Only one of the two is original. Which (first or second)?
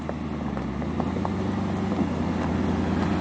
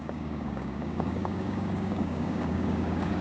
first